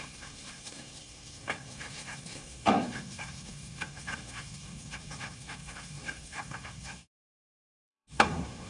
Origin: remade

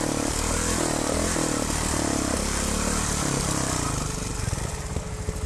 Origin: recorded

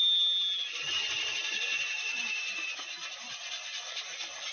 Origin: recorded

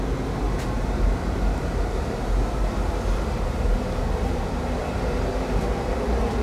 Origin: remade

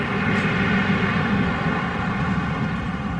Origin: recorded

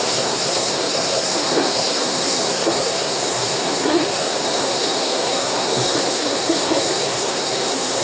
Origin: remade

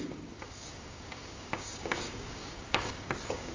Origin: remade